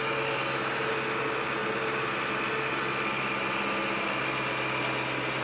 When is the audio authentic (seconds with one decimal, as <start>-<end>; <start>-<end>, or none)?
0.0-5.4